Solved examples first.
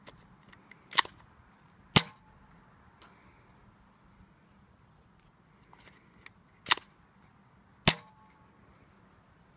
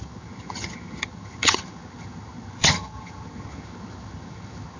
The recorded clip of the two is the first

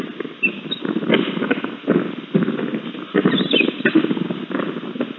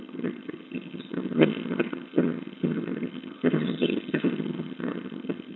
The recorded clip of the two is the first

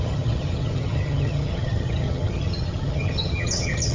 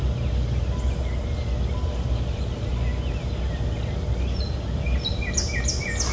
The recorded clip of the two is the second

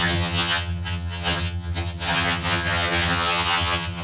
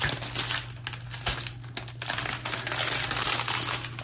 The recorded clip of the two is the second